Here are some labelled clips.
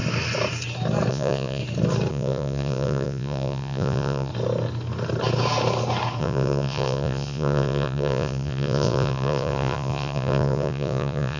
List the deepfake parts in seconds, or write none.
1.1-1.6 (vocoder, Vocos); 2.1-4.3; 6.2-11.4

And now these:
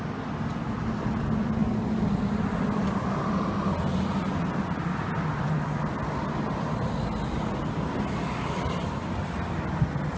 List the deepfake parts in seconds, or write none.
none